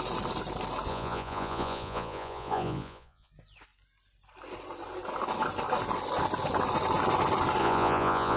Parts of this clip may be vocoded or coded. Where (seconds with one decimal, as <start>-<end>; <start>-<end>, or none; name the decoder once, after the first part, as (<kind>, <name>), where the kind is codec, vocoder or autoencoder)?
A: 0.9-3.3 (vocoder, Vocos); 7.6-8.4